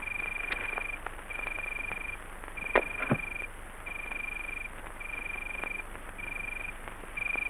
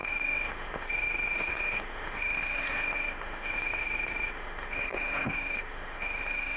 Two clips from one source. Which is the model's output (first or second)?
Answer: second